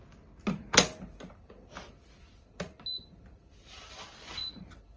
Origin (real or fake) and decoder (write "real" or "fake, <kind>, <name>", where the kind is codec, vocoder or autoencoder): real